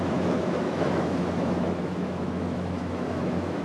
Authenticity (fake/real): fake